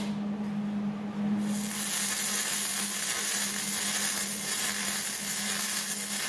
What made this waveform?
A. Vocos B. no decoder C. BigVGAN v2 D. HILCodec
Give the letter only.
B